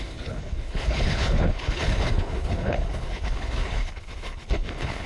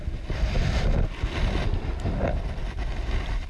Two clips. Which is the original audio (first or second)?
second